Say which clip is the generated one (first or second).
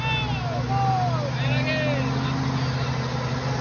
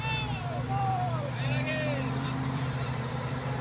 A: second